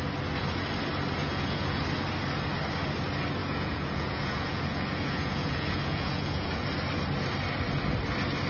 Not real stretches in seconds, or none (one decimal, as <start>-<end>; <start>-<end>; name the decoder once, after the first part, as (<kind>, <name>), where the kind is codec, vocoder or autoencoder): 1.2-1.8 (vocoder, Vocos); 3.4-6.5

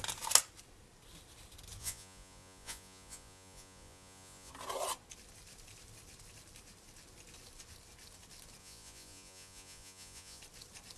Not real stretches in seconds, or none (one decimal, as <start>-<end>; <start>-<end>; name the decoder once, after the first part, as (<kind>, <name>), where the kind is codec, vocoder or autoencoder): 1.8-4.5 (vocoder, Vocos); 8.6-10.4